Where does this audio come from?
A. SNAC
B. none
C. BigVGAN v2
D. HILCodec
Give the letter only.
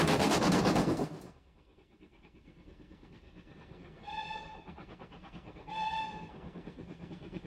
A